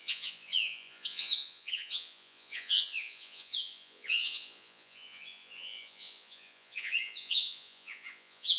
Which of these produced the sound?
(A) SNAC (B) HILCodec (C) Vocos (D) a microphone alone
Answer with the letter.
C